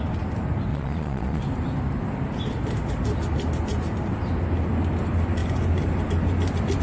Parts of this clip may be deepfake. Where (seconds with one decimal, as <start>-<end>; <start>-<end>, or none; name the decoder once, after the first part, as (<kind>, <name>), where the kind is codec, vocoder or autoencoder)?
0.7-1.4 (vocoder, Vocos)

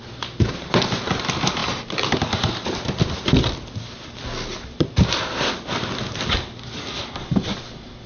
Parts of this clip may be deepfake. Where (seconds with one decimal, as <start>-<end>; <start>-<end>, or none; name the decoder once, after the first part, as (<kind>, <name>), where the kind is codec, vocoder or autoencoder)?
none

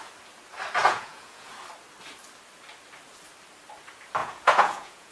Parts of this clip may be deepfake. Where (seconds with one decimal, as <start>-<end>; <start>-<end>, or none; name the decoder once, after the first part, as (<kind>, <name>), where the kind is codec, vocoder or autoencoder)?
0.8-1.5 (vocoder, Vocos); 4.2-5.1

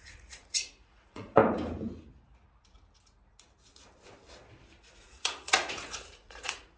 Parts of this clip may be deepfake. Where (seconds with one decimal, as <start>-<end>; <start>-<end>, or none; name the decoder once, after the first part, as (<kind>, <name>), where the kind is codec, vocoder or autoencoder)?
0.0-1.4 (vocoder, Vocos); 4.7-6.8

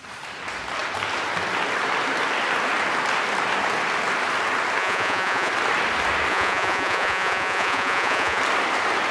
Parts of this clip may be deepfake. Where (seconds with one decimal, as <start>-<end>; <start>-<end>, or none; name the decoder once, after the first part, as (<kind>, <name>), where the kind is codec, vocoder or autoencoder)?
4.8-5.5 (vocoder, Vocos); 6.3-8.4

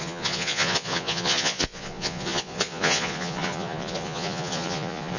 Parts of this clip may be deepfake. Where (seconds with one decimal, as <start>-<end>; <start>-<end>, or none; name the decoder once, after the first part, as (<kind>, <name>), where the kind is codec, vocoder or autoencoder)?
0.0-5.2 (vocoder, Vocos)

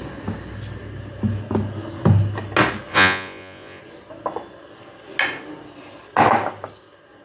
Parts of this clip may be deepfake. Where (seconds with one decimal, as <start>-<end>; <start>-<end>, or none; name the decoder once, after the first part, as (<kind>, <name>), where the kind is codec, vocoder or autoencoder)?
2.9-3.8 (vocoder, Vocos)

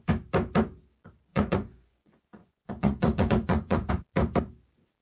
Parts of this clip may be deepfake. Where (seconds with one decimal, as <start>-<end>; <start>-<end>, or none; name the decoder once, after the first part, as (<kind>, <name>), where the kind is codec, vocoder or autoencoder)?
1.3-3.9 (vocoder, Vocos)